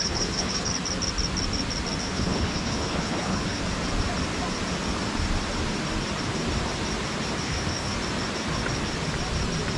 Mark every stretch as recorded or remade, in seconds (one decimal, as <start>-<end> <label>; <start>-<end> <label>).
0.0-0.7 remade; 0.7-2.0 recorded; 2.0-3.6 remade; 3.6-7.4 recorded; 7.4-7.9 remade; 7.9-9.8 recorded